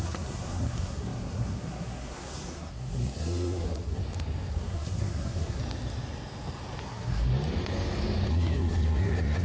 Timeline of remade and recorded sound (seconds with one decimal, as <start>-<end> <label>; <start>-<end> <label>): 0.0-4.0 remade; 4.0-4.5 recorded; 4.5-5.6 remade; 5.6-6.8 recorded; 6.8-7.3 remade; 7.3-8.3 recorded; 8.3-9.4 remade